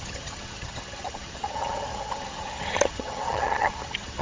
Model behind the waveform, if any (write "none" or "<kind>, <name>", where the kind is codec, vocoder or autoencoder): vocoder, HiFi-GAN